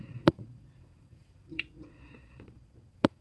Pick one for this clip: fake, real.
fake